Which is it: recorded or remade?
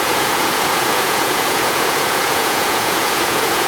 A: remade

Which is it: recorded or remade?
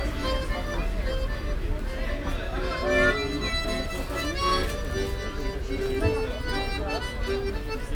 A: recorded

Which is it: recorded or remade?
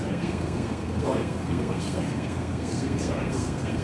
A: remade